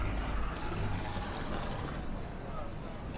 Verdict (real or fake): real